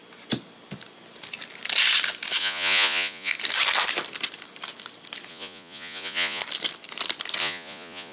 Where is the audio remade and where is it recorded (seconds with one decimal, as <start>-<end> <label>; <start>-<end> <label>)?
0.0-2.4 recorded; 2.4-3.3 remade; 3.3-5.3 recorded; 5.3-6.4 remade; 6.4-7.4 recorded; 7.4-8.1 remade